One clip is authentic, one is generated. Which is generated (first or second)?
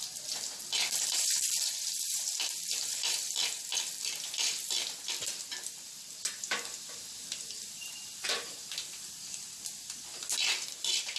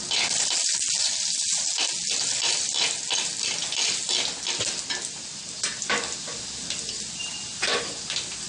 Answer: first